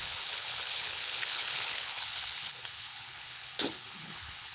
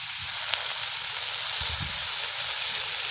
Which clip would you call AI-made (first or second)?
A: first